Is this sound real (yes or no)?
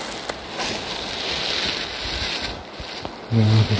yes